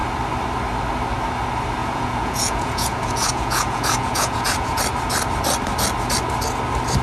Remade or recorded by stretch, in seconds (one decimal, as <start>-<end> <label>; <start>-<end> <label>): 0.0-1.8 recorded; 1.8-4.8 remade; 4.8-7.0 recorded